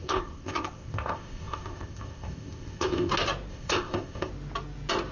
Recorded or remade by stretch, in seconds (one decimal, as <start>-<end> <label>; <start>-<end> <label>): 0.0-3.1 remade; 3.1-3.5 recorded; 3.5-4.3 remade; 4.3-5.1 recorded